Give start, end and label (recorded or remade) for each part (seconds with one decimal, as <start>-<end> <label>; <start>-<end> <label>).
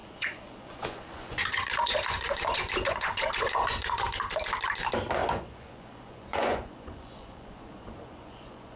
0.0-3.9 remade; 3.9-5.2 recorded; 5.2-8.8 remade